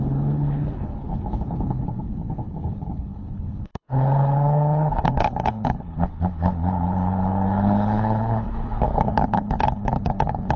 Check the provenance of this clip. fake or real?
fake